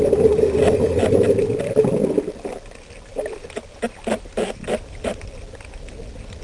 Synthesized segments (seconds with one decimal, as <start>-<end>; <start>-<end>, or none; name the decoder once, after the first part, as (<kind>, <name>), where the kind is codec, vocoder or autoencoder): none